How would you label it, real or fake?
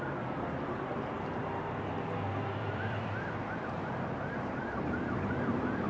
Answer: fake